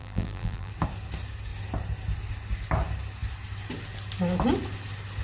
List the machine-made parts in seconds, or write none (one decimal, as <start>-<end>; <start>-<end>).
0.0-0.7